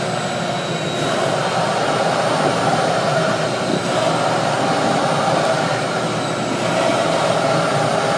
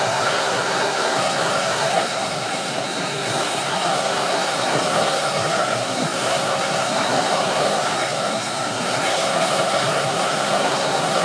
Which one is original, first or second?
first